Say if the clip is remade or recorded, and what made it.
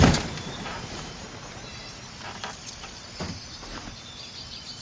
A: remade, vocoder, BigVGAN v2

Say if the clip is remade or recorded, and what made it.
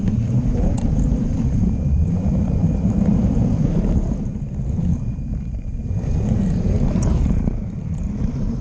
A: remade, vocoder, BigVGAN v2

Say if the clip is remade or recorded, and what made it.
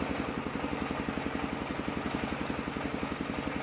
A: recorded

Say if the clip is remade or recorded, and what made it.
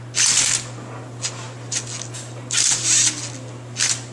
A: recorded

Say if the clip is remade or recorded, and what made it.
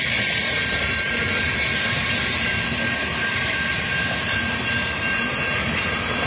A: remade, vocoder, BigVGAN v2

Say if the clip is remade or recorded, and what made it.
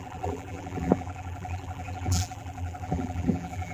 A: remade, vocoder, BigVGAN v2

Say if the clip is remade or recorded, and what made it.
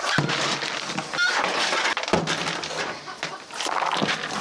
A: recorded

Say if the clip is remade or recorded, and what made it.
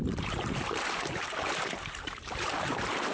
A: remade, vocoder, BigVGAN v2